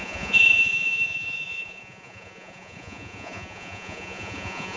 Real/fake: fake